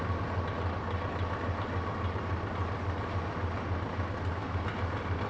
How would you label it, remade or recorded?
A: recorded